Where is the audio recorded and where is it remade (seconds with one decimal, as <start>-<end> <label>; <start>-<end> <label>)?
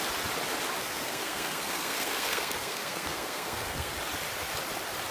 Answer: 0.0-0.8 recorded; 0.8-3.9 remade; 3.9-5.1 recorded